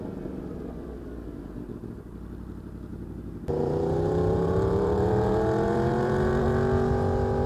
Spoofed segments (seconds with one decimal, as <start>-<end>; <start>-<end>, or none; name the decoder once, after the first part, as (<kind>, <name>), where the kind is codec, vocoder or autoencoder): 2.9-6.3 (vocoder, BigVGAN v2)